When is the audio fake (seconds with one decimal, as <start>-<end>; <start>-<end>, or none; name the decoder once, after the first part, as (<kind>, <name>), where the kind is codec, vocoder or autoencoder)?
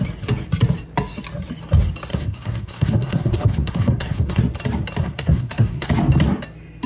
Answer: 2.1-4.4 (codec, SNAC); 5.0-5.9